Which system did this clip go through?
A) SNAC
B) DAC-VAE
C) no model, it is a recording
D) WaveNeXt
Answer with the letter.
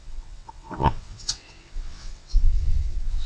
D